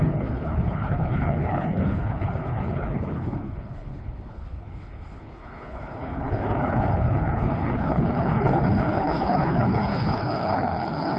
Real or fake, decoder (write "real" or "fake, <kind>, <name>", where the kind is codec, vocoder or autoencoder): fake, codec, HILCodec